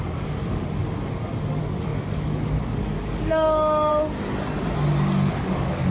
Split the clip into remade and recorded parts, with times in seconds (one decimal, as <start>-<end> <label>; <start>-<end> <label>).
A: 0.0-0.8 remade; 0.8-1.6 recorded; 1.6-3.9 remade; 3.9-5.3 recorded; 5.3-5.9 remade